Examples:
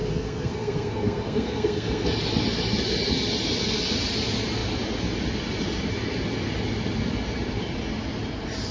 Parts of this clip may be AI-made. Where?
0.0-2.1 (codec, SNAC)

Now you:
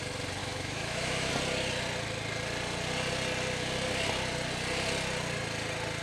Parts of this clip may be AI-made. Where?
0.4-1.3 (autoencoder, DAC-VAE)

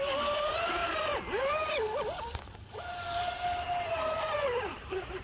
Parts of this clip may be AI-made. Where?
0.0-0.8 (vocoder, BigVGAN v2); 3.9-5.2

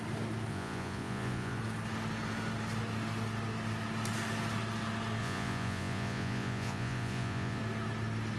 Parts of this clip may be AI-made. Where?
0.5-1.6 (vocoder, Vocos); 5.2-7.6